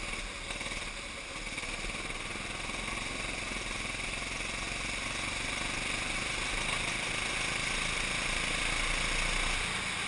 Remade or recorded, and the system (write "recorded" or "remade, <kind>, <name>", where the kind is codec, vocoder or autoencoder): recorded